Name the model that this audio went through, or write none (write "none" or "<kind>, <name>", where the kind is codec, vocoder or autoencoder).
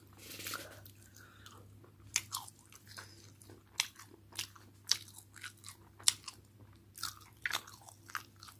none